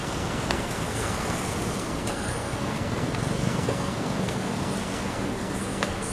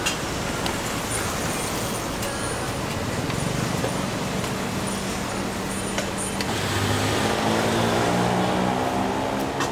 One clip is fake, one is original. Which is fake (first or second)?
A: first